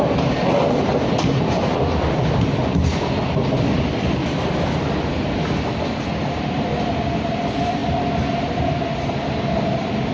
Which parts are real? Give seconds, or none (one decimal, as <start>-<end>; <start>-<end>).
0.0-10.1